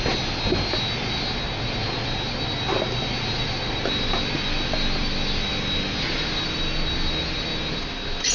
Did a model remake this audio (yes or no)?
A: no